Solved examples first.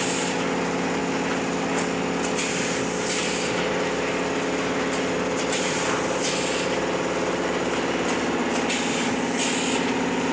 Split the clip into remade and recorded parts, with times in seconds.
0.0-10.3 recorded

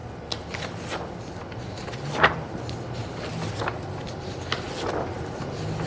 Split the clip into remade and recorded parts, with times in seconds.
0.0-5.9 recorded

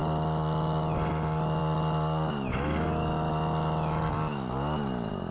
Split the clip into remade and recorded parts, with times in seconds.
0.0-5.3 recorded

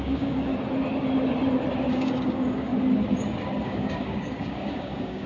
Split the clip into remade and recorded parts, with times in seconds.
0.0-0.5 remade; 0.5-1.9 recorded; 1.9-2.7 remade; 2.7-3.6 recorded; 3.6-5.3 remade

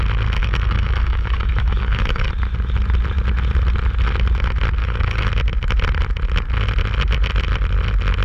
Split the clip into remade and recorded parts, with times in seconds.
0.0-0.4 recorded; 0.4-2.3 remade; 2.3-4.8 recorded; 4.8-5.3 remade; 5.3-8.2 recorded

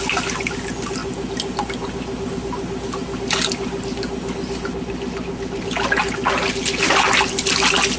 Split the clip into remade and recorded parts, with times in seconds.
0.0-8.0 recorded